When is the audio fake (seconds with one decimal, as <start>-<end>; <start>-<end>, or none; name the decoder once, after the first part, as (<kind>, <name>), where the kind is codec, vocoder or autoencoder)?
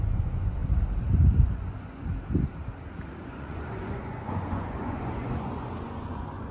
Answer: 0.0-0.6 (vocoder, Vocos); 1.5-2.1; 3.2-6.5